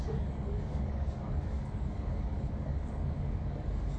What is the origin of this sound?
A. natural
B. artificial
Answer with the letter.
B